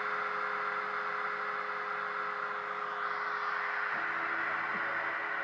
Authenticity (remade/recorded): recorded